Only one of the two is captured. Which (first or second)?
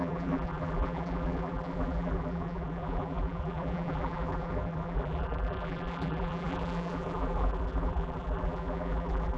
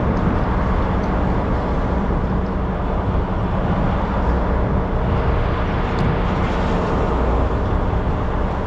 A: second